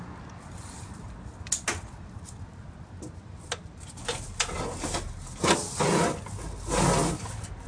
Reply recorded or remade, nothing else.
recorded